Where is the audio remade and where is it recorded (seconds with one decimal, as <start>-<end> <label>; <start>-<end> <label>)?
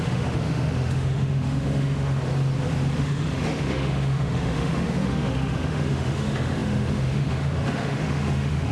0.0-2.2 remade; 2.2-3.0 recorded; 3.0-8.7 remade